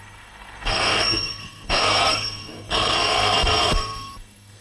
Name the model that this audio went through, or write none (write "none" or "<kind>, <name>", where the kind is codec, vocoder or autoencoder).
codec, SNAC